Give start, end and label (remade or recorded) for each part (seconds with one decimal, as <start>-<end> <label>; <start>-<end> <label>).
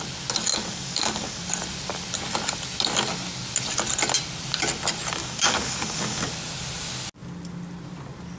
0.0-0.5 recorded; 0.5-1.4 remade; 1.4-5.2 recorded; 5.2-6.3 remade; 6.3-8.4 recorded